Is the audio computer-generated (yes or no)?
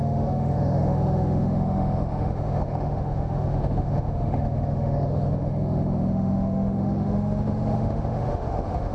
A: yes